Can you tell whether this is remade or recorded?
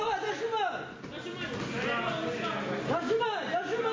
recorded